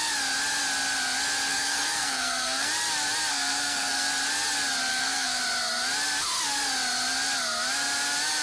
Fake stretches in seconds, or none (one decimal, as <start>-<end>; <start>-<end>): 1.5-2.7; 3.3-4.1; 4.9-5.4